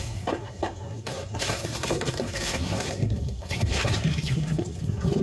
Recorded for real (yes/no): no